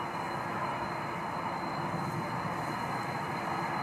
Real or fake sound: real